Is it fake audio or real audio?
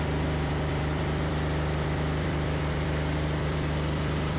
fake